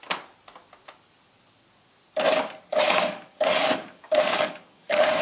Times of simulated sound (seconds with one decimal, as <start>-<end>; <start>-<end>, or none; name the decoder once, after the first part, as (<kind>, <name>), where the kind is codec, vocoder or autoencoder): 2.7-5.2 (codec, DAC)